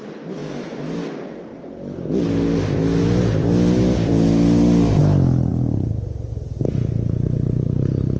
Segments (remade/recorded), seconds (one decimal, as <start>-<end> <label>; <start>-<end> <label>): 0.0-8.2 recorded